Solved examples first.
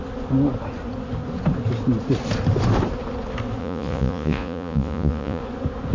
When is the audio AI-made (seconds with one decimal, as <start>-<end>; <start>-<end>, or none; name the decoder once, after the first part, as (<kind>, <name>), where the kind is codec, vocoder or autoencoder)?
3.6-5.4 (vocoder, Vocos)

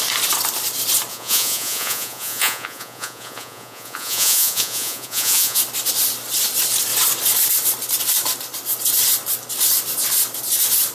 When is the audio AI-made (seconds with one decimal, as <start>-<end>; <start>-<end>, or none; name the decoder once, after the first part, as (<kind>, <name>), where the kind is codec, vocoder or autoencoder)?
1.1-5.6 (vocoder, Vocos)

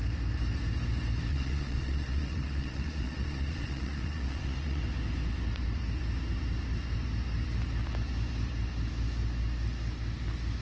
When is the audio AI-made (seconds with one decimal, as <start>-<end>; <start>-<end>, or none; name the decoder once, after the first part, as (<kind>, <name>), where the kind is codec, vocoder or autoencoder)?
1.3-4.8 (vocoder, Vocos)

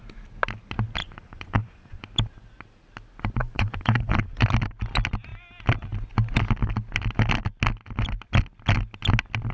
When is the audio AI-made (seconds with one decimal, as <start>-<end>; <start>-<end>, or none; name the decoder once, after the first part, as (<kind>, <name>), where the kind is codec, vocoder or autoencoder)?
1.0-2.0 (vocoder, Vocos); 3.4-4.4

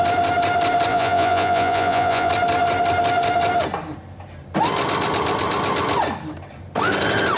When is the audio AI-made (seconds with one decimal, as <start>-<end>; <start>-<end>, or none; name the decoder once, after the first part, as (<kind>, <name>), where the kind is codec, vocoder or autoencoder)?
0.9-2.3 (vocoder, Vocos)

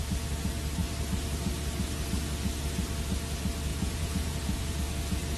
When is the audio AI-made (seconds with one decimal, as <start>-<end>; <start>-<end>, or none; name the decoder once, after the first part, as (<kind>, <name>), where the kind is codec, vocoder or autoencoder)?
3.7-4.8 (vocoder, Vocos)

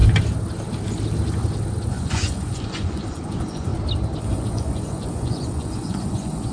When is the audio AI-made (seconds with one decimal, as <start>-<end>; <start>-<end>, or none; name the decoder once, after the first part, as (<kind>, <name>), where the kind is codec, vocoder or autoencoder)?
1.9-3.7 (vocoder, Vocos); 4.2-6.5

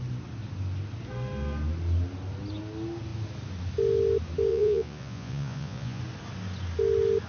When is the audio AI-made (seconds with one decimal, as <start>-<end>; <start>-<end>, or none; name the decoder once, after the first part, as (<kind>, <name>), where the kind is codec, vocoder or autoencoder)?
4.5-6.0 (vocoder, Vocos)